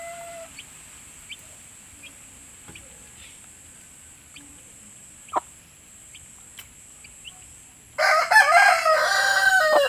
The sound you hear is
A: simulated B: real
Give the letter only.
B